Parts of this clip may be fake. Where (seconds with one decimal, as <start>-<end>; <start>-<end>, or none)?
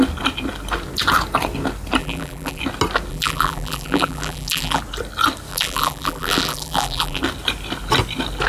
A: 2.0-2.6; 3.1-4.8; 5.5-7.2